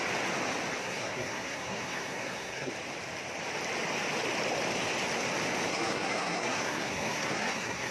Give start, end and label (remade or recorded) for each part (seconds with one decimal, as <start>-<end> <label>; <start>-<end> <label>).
0.0-0.8 recorded; 0.8-2.7 remade; 2.7-5.7 recorded; 5.7-7.9 remade